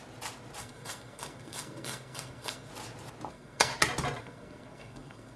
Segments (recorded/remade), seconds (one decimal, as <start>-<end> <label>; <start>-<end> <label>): 0.0-0.6 recorded; 0.6-2.7 remade; 2.7-3.3 recorded; 3.3-3.7 remade; 3.7-4.2 recorded; 4.2-5.4 remade